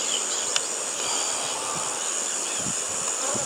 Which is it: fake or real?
real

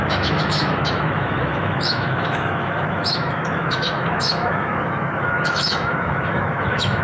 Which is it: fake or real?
fake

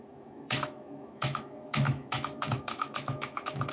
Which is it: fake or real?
fake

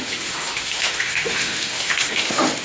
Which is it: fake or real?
fake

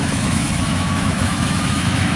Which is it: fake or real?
fake